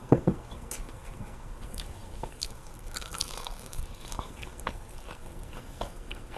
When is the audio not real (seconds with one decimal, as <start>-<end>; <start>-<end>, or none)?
0.0-6.4